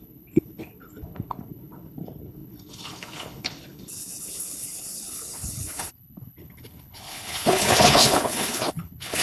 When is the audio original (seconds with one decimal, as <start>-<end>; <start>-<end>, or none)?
none